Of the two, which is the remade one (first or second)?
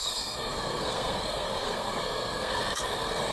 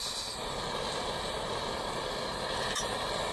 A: first